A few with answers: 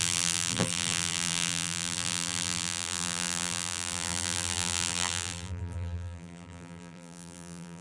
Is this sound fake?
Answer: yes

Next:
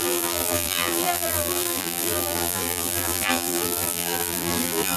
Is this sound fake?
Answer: yes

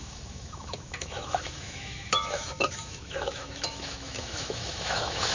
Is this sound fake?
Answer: yes